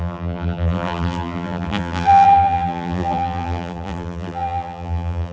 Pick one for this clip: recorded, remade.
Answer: remade